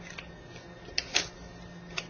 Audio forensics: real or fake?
real